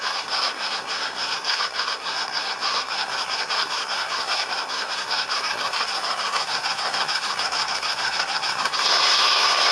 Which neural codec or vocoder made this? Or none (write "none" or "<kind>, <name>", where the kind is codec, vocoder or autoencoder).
codec, SNAC